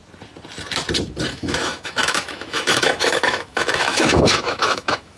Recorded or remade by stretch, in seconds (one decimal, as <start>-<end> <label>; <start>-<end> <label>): 0.0-1.3 recorded; 1.3-5.2 remade